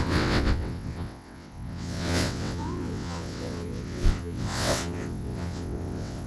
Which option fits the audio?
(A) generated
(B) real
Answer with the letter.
A